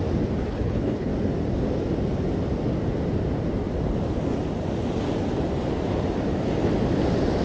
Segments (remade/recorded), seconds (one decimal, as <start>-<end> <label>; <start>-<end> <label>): 0.0-0.5 recorded; 0.5-1.1 remade; 1.1-7.4 recorded